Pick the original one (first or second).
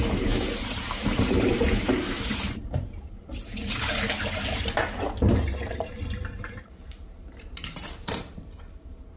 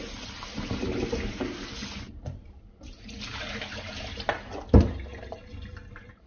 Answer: second